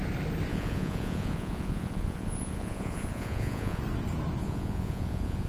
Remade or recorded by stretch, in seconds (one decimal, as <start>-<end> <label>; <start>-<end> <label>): 0.0-0.5 recorded; 0.5-3.8 remade; 3.8-4.4 recorded; 4.4-5.5 remade